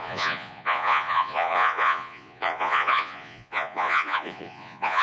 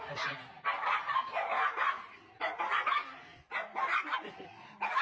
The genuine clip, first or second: second